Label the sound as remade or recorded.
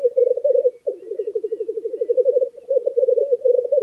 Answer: recorded